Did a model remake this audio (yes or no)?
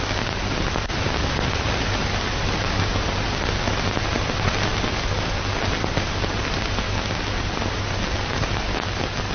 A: no